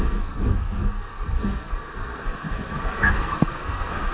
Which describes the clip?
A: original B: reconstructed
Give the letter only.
B